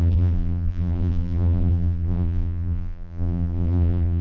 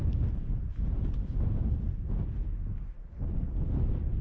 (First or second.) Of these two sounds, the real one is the second